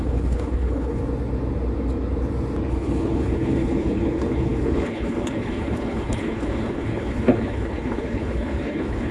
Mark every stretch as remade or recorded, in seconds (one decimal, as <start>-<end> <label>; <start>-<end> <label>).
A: 0.0-1.0 remade; 1.0-2.7 recorded; 2.7-9.1 remade